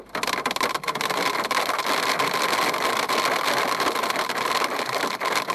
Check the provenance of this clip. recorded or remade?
recorded